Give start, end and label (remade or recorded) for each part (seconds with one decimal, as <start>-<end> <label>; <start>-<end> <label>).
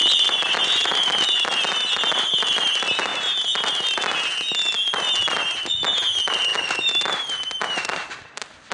0.0-8.7 recorded